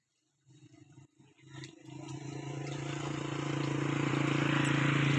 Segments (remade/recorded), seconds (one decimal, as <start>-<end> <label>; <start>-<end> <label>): 0.0-5.2 recorded